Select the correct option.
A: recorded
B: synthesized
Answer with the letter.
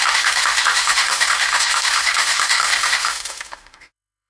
B